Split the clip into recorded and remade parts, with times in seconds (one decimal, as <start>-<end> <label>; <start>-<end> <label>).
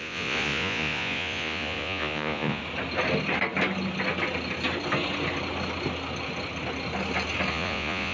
0.0-2.6 remade; 2.6-7.5 recorded; 7.5-8.1 remade